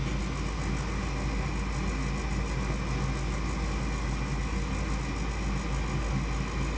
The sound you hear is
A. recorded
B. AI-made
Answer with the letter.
A